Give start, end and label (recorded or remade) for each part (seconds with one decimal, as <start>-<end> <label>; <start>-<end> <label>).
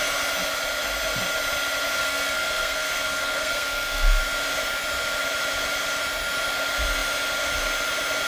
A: 0.0-2.0 recorded; 2.0-4.2 remade; 4.2-8.3 recorded